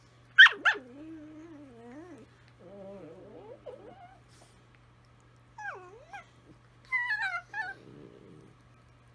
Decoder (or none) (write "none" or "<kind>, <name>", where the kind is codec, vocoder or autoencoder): none